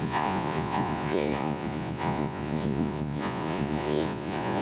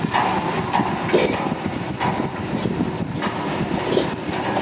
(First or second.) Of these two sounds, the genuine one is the second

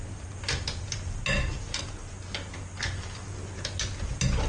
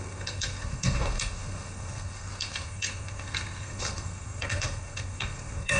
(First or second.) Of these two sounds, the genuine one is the first